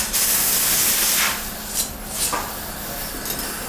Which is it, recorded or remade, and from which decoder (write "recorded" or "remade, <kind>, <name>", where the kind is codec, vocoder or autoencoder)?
recorded